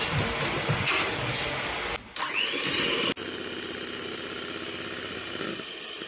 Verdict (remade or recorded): recorded